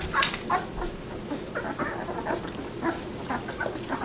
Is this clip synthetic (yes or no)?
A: no